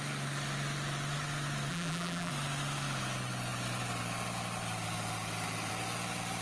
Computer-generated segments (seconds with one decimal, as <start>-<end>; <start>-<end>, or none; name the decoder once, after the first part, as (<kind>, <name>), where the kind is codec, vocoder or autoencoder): 1.7-2.3 (vocoder, BigVGAN v2)